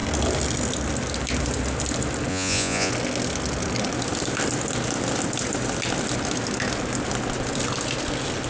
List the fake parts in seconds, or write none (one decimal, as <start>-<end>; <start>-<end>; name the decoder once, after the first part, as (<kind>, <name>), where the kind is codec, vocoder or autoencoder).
2.3-2.9 (vocoder, Vocos)